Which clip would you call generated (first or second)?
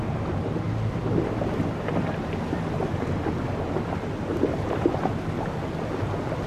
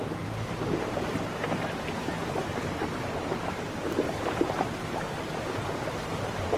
second